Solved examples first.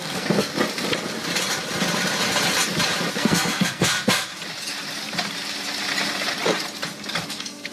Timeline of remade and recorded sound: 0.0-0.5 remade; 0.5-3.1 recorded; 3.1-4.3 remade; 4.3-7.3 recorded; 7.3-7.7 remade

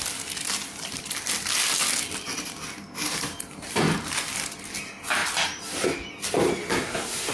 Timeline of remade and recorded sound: 0.0-6.7 recorded; 6.7-7.3 remade

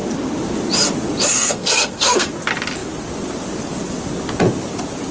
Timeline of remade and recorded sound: 0.0-1.3 recorded; 1.3-2.3 remade; 2.3-5.1 recorded

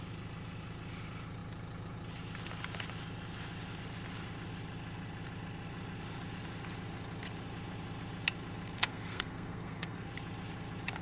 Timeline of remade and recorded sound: 0.0-8.8 recorded; 8.8-10.1 remade; 10.1-11.0 recorded